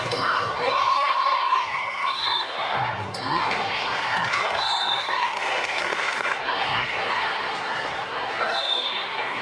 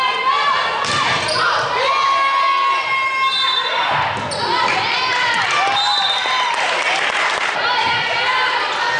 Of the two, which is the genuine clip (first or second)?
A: second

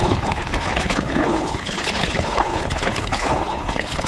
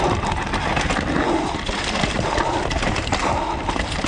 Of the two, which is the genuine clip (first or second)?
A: second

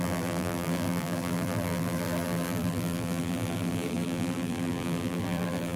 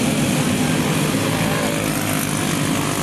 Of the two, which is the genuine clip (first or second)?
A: second